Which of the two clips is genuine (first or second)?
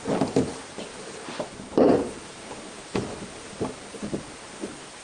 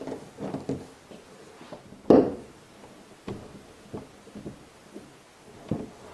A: second